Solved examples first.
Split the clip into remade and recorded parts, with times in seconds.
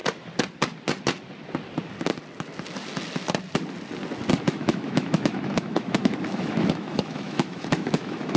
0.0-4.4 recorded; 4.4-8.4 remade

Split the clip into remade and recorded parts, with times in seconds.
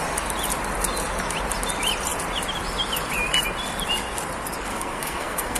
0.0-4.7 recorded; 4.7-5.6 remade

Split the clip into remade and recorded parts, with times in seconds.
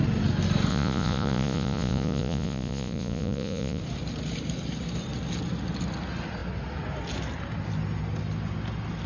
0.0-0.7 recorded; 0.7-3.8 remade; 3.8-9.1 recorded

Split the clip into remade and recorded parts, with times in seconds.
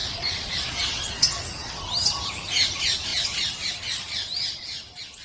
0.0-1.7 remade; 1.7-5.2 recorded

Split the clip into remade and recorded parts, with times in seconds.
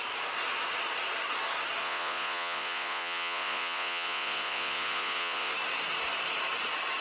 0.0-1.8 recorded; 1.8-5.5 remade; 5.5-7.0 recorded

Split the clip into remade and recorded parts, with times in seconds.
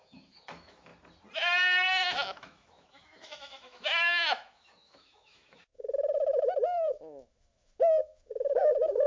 0.0-0.9 remade; 0.9-2.0 recorded; 2.0-9.1 remade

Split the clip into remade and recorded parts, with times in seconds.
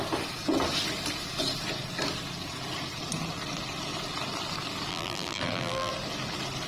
0.0-4.9 recorded; 4.9-5.9 remade; 5.9-6.7 recorded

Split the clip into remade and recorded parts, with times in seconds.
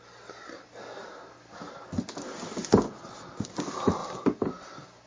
0.0-5.1 recorded